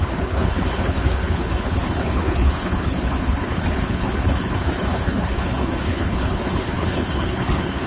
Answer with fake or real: fake